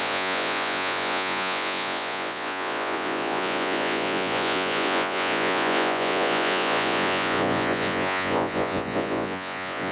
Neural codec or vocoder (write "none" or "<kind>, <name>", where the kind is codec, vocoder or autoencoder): vocoder, Vocos